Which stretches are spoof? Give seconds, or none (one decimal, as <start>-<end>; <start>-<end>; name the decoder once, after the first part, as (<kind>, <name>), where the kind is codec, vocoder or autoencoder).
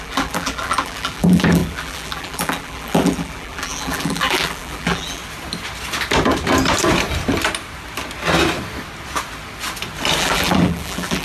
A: 0.0-5.2 (vocoder, BigVGAN v2); 10.2-11.2